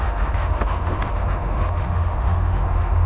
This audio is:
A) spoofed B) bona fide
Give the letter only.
A